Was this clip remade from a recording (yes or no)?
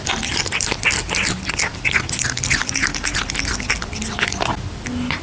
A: no